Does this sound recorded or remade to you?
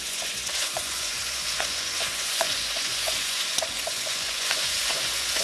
remade